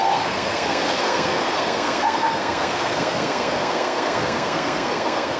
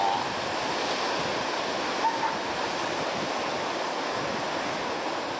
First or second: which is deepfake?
first